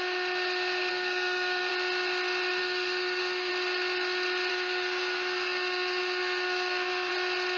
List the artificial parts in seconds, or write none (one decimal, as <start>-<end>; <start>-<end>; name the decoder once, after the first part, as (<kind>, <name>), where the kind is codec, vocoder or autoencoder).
0.9-1.7 (codec, SNAC); 2.6-3.5; 4.5-7.1